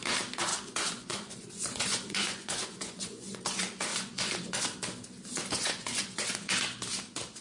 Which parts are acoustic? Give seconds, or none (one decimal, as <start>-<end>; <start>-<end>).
0.0-0.5; 3.4-3.9; 4.6-5.6; 6.5-7.4